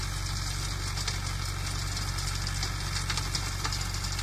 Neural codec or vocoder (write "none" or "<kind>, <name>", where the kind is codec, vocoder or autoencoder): none